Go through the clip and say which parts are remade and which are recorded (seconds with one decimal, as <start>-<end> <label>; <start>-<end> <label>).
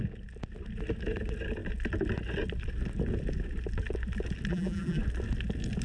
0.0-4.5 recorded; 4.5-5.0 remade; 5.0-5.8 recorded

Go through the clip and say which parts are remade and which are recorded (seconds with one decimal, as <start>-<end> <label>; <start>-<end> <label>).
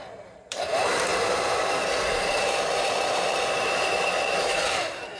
0.0-5.2 remade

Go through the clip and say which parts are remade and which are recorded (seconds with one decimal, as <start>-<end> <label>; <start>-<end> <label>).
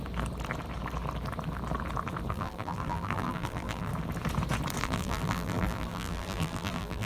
0.0-2.3 recorded; 2.3-3.9 remade; 3.9-4.8 recorded; 4.8-7.1 remade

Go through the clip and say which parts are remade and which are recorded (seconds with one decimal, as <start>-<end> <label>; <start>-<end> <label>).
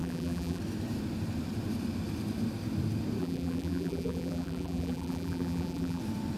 0.0-0.6 remade; 0.6-3.2 recorded; 3.2-6.0 remade; 6.0-6.4 recorded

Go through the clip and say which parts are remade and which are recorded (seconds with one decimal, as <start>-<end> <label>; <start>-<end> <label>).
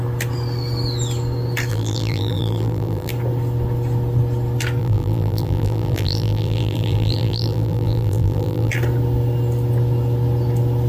0.0-1.7 recorded; 1.7-3.1 remade; 3.1-4.8 recorded; 4.8-8.7 remade; 8.7-10.9 recorded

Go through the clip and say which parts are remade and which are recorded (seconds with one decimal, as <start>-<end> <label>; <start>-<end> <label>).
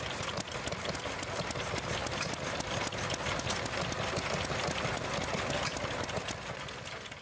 0.0-7.2 recorded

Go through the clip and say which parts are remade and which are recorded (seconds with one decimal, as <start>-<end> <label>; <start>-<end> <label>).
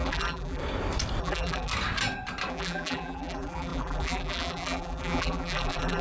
0.0-0.6 remade; 0.6-1.2 recorded; 1.2-1.7 remade; 1.7-2.5 recorded; 2.5-6.0 remade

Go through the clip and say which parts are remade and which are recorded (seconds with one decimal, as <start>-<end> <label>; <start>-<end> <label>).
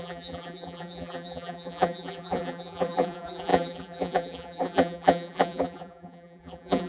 0.0-6.9 remade